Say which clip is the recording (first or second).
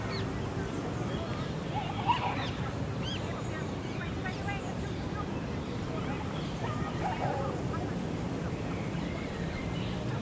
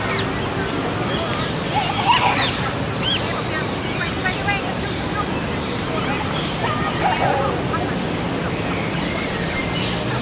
second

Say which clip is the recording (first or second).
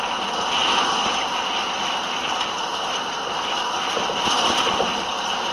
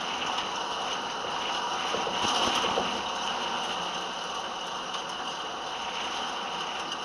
second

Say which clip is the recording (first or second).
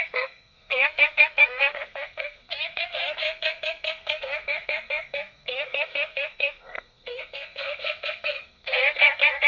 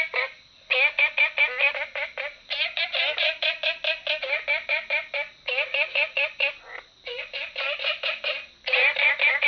second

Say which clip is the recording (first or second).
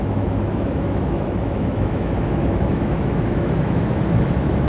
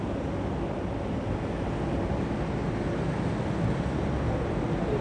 second